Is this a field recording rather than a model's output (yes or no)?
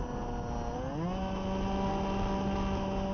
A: yes